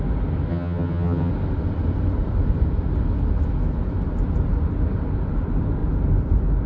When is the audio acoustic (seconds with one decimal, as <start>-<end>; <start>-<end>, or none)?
0.0-0.5; 1.3-6.7